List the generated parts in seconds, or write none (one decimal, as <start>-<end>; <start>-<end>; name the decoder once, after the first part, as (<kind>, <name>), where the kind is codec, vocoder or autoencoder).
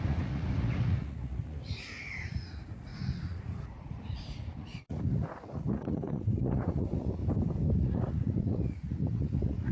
0.0-7.2 (vocoder, Vocos); 7.8-9.7